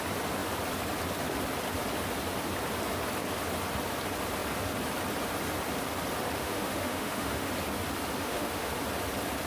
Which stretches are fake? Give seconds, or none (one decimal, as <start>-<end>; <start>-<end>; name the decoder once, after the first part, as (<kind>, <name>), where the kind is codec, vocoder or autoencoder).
6.4-7.5 (autoencoder, DAC-VAE); 8.2-8.7